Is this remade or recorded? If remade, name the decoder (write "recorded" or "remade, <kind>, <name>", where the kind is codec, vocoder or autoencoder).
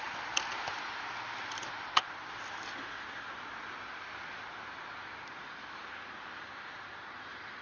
recorded